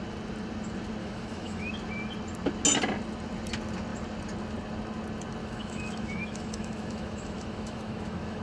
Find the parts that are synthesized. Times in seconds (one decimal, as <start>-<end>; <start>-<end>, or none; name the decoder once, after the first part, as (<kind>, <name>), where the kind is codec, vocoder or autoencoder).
1.0-1.7 (autoencoder, DAC-VAE); 5.4-8.4